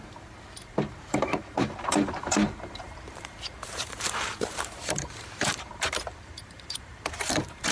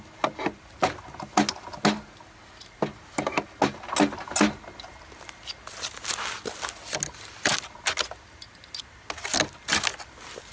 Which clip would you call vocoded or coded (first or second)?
first